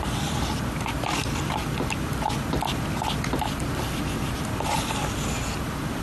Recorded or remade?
recorded